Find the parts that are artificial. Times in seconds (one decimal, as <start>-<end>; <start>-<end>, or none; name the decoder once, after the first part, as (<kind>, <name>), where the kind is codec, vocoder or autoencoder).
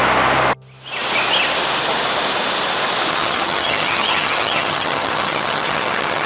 3.1-6.3 (vocoder, HiFi-GAN)